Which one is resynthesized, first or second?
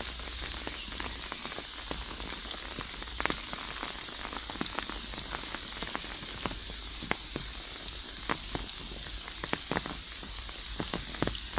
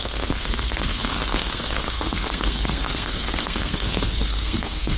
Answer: second